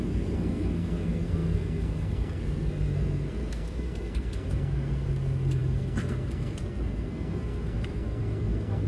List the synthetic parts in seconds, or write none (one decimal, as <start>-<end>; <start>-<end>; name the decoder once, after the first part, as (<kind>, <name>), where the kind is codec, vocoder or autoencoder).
0.0-8.9 (codec, SNAC)